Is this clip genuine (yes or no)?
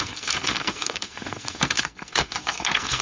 no